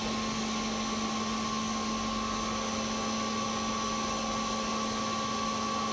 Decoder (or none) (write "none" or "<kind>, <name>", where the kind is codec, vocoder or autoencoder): none